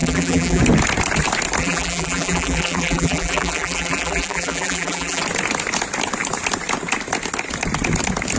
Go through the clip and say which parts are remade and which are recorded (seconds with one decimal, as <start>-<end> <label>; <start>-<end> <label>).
0.0-0.6 remade; 0.6-1.6 recorded; 1.6-5.2 remade; 5.2-8.4 recorded

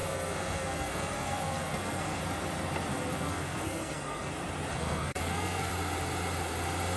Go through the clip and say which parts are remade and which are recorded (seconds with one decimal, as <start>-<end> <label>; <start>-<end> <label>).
0.0-2.2 remade; 2.2-2.9 recorded; 2.9-4.3 remade; 4.3-4.7 recorded; 4.7-5.7 remade; 5.7-7.0 recorded

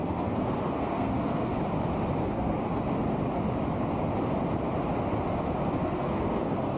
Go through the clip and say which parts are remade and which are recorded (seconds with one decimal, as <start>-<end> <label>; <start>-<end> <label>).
0.0-1.5 remade; 1.5-2.2 recorded; 2.2-2.8 remade; 2.8-5.8 recorded; 5.8-6.8 remade

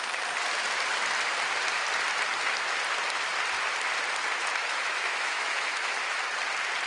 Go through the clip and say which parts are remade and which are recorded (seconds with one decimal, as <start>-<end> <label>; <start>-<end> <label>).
0.0-4.6 recorded; 4.6-6.2 remade; 6.2-6.9 recorded

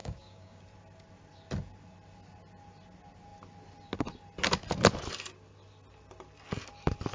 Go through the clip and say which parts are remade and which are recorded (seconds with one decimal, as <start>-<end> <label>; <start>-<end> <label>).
0.0-0.6 remade; 0.6-7.1 recorded

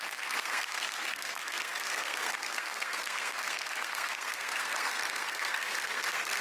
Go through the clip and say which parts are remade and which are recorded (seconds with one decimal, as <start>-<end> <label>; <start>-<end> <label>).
0.0-6.4 remade